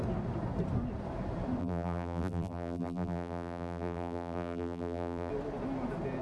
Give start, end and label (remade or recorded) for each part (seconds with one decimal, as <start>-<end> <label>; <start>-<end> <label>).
0.0-1.6 recorded; 1.6-5.3 remade; 5.3-6.2 recorded